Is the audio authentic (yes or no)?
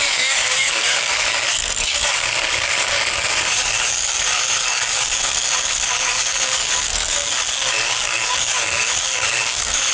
no